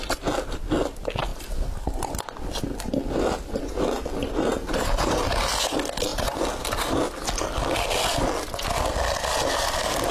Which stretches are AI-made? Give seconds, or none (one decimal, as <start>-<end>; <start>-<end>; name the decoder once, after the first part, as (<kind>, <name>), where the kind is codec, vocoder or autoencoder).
4.2-5.3 (vocoder, BigVGAN v2)